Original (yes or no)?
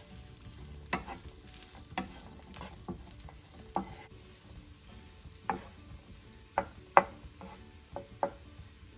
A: yes